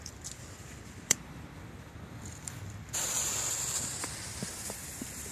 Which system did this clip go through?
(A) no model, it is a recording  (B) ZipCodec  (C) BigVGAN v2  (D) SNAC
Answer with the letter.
C